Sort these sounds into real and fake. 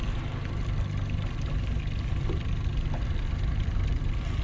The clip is real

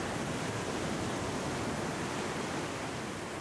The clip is real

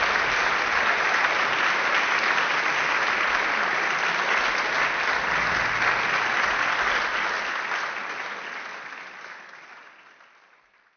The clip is real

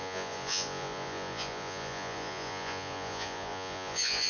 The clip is fake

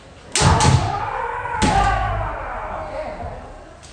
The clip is real